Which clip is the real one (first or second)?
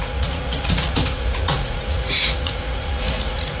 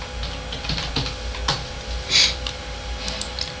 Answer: second